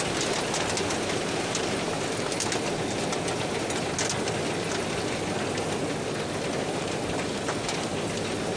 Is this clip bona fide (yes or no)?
yes